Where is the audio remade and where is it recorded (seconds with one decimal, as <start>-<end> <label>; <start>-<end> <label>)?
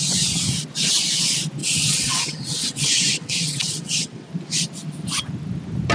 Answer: 0.0-1.6 recorded; 1.6-4.3 remade; 4.3-5.9 recorded